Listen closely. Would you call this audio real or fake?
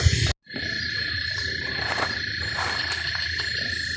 real